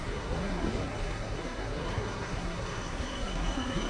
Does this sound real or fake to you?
fake